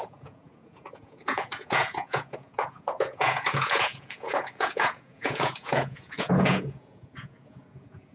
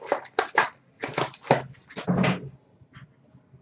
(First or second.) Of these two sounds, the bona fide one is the second